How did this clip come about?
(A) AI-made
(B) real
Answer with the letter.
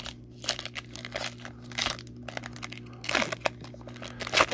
B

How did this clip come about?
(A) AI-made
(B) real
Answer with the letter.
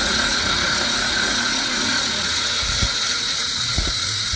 A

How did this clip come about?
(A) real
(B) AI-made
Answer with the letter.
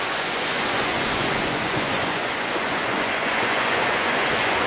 B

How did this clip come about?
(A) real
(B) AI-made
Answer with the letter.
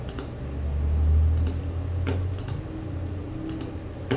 A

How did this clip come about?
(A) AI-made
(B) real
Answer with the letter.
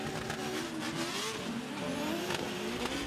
B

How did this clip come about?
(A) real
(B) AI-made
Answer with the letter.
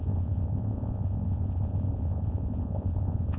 B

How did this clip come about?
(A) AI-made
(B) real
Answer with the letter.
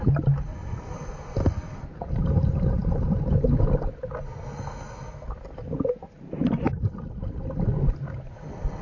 B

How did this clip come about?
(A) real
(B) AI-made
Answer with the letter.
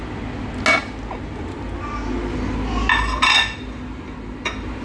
A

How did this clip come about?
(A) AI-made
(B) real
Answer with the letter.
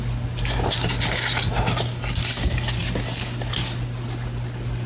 B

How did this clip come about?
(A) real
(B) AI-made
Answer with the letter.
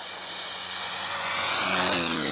B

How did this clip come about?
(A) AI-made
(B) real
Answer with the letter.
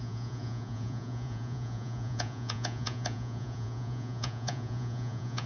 A